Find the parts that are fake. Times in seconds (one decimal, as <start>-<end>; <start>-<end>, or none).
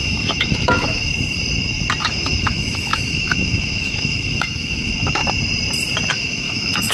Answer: 0.0-1.0; 2.0-5.2; 6.1-6.9